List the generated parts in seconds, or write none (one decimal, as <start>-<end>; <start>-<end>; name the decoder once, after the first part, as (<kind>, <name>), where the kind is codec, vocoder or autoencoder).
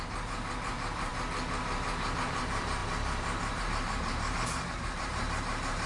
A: 0.0-1.1 (vocoder, BigVGAN v2); 2.1-5.9